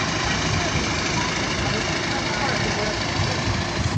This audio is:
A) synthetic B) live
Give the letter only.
B